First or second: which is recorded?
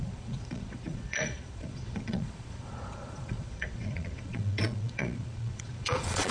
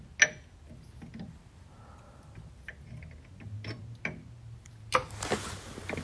second